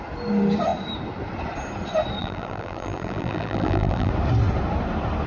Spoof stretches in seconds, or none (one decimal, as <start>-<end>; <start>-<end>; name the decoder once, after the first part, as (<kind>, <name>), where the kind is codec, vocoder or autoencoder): 2.2-4.1 (vocoder, BigVGAN v2)